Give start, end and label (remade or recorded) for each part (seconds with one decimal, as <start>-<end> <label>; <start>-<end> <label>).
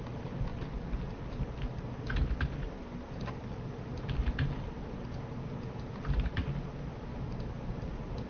0.0-8.3 recorded